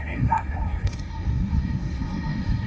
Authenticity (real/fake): fake